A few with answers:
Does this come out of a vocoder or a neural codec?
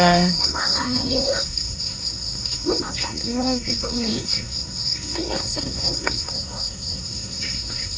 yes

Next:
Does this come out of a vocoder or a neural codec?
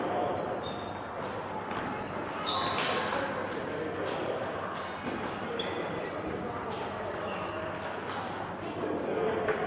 no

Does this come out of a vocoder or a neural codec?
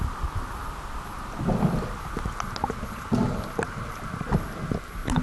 no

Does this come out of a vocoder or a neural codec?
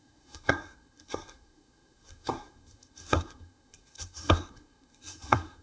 yes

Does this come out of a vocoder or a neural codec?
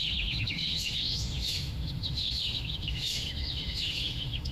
yes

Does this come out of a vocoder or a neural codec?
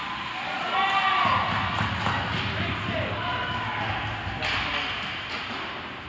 no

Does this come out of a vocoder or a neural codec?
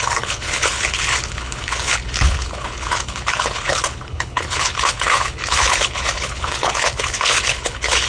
yes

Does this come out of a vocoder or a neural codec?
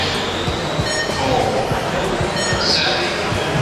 no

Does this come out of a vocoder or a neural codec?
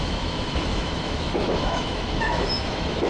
yes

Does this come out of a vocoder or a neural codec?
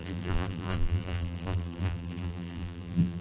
yes